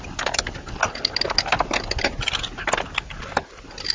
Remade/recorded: recorded